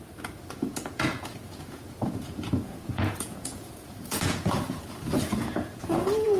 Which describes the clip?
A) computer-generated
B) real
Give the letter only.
A